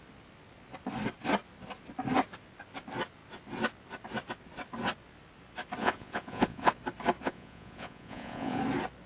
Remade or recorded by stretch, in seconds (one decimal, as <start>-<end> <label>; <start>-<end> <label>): 0.0-5.8 recorded; 5.8-6.7 remade; 6.7-7.2 recorded; 7.2-8.6 remade; 8.6-9.1 recorded

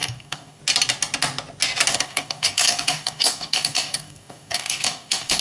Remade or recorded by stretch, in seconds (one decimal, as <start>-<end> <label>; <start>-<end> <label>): 0.0-0.6 remade; 0.6-1.9 recorded; 1.9-5.4 remade

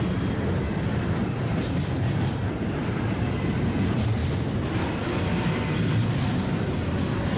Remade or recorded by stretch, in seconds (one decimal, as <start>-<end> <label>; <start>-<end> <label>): 0.0-7.4 recorded

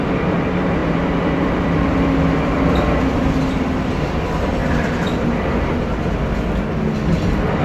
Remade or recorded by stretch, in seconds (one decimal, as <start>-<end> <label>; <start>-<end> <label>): 0.0-4.6 recorded; 4.6-6.1 remade; 6.1-7.6 recorded

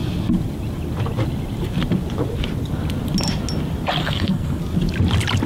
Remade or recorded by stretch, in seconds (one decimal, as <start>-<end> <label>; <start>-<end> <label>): 0.0-4.0 recorded; 4.0-4.6 remade; 4.6-5.5 recorded

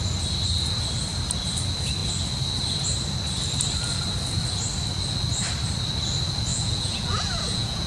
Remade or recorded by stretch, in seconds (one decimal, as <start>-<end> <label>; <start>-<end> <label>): 0.0-6.5 recorded; 6.5-7.9 remade